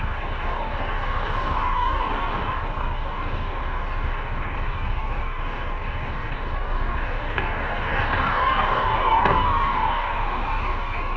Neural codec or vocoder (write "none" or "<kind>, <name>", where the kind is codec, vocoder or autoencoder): codec, DAC